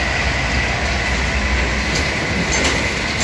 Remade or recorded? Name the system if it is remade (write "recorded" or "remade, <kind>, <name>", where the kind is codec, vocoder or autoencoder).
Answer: recorded